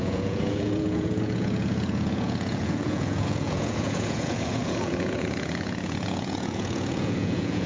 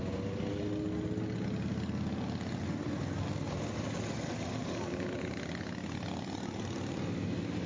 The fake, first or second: first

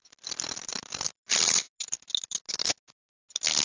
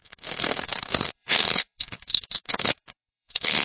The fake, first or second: second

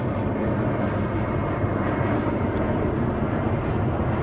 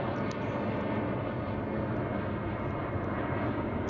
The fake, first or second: first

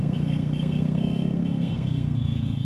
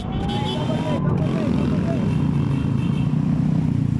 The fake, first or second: first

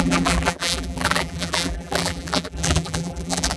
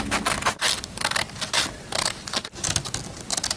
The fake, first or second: first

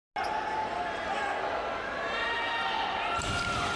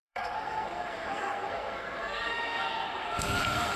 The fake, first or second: second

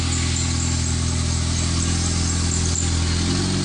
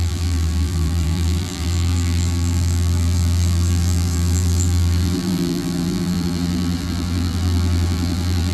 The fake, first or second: second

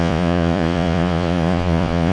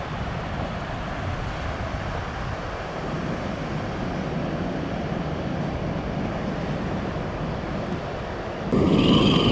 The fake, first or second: first